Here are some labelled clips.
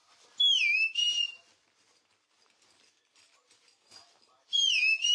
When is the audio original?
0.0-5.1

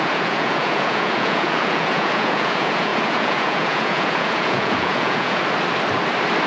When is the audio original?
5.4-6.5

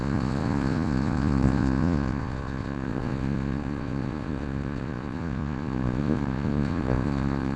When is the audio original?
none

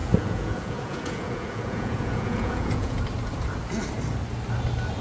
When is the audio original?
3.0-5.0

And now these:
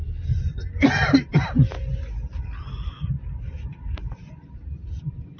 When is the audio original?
0.0-5.4

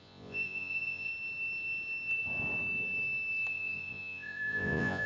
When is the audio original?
1.1-3.5

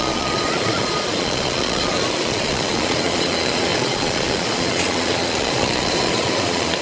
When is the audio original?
none

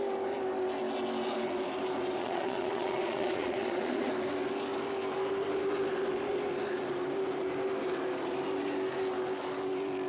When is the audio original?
0.0-2.2; 4.1-10.1